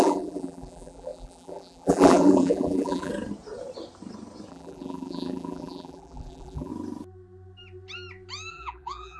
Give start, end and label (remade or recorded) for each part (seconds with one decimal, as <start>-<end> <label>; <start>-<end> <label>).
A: 0.0-3.1 remade; 3.1-4.5 recorded; 4.5-6.7 remade; 6.7-8.5 recorded; 8.5-9.2 remade